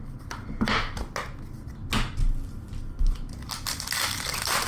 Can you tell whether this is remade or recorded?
recorded